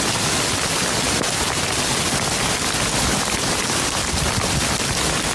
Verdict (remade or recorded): recorded